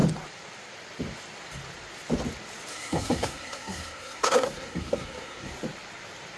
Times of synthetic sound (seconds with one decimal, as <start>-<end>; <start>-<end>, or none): 2.7-5.5